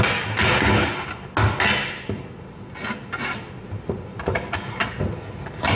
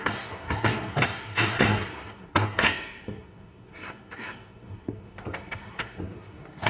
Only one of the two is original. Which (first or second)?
first